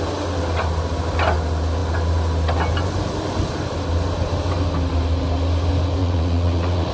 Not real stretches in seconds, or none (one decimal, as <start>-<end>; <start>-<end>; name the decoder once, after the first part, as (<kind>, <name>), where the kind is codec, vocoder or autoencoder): 6.0-6.9 (vocoder, Vocos)